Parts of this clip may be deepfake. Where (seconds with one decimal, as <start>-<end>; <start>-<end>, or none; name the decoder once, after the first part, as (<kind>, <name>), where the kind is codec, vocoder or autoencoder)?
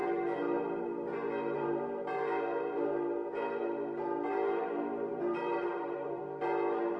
5.1-6.2 (vocoder, BigVGAN v2)